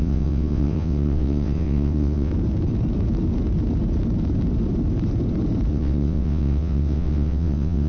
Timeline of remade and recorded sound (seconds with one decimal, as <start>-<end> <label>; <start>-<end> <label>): 0.0-2.3 remade; 2.3-5.7 recorded; 5.7-7.9 remade